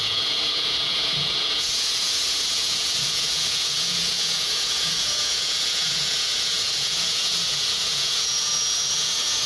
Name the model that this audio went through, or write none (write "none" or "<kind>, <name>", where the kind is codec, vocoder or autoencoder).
vocoder, Vocos